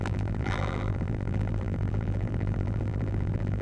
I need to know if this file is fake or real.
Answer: fake